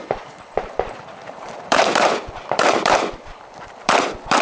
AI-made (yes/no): yes